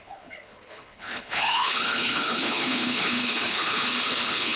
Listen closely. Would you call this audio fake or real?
fake